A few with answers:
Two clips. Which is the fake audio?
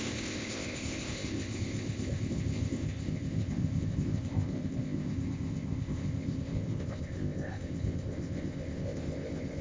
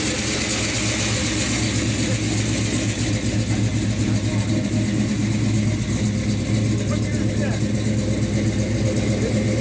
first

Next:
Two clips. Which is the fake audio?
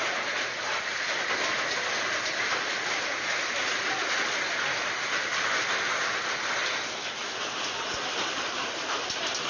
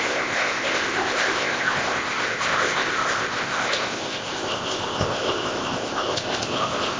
second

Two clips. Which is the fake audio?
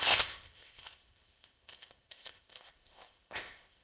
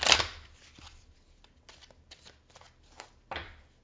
first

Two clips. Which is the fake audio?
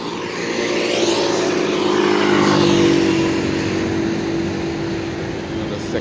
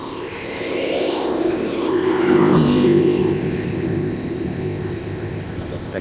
second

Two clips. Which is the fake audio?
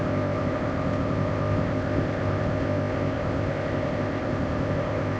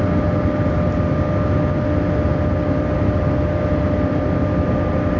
first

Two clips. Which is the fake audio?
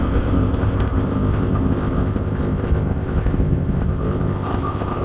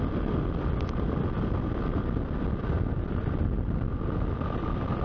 first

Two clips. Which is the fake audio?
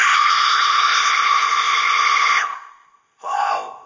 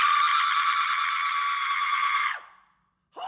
first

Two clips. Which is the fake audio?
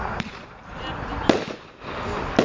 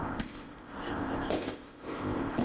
second